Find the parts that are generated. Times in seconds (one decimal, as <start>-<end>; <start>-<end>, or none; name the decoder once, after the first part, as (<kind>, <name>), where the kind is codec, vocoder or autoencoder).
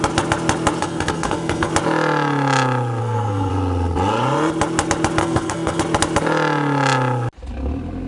0.8-1.7 (codec, SNAC); 3.0-3.5; 5.2-5.8